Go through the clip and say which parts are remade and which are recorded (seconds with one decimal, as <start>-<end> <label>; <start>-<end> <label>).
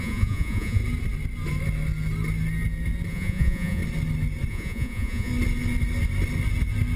0.0-0.8 remade; 0.8-3.1 recorded; 3.1-3.8 remade; 3.8-4.5 recorded; 4.5-5.3 remade; 5.3-7.0 recorded